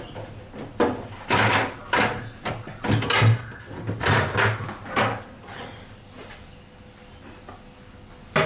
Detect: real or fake real